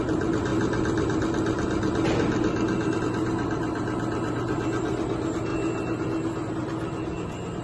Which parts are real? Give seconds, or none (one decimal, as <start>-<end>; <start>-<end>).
0.0-7.6